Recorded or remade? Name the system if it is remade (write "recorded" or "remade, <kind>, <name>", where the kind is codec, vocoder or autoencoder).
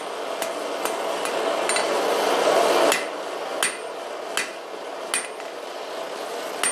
recorded